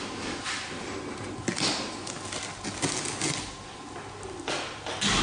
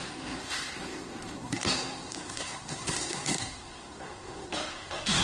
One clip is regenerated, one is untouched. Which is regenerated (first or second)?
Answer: second